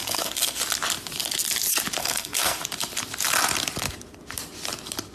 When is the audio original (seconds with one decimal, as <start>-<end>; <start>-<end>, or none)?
0.6-2.0; 2.6-5.1